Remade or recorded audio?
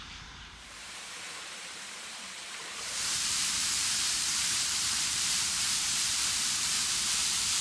remade